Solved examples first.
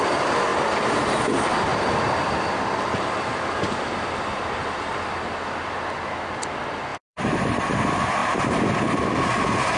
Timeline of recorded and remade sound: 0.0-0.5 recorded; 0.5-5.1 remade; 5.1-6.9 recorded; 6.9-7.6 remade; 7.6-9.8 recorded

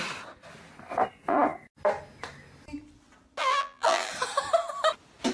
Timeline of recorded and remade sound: 0.0-3.4 recorded; 3.4-4.1 remade; 4.1-5.3 recorded

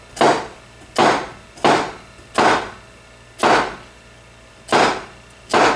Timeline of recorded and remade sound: 0.0-5.8 recorded

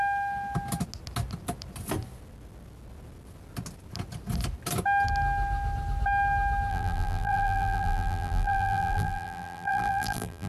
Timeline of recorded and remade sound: 0.0-6.7 recorded; 6.7-10.5 remade

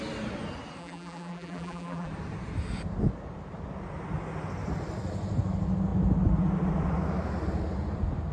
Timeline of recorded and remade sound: 0.0-0.8 recorded; 0.8-2.1 remade; 2.1-8.3 recorded